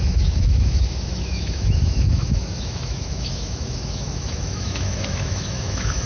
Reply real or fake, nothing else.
fake